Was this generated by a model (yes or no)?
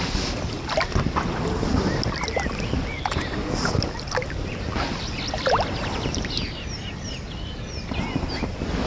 no